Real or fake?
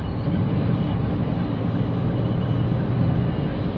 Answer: real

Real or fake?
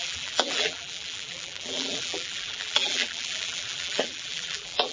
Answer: fake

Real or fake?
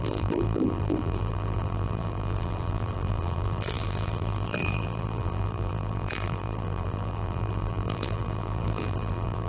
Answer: fake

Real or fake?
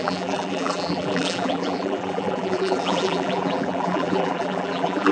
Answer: fake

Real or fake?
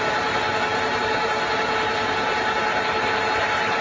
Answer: fake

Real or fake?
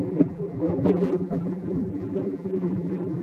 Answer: fake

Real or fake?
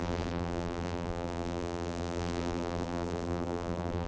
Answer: fake